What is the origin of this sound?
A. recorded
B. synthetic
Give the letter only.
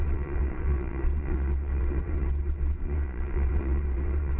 B